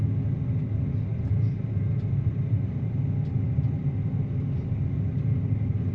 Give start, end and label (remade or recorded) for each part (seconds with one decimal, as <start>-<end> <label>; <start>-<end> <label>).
0.0-5.9 recorded